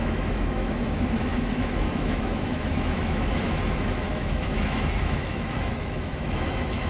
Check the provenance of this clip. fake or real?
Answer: fake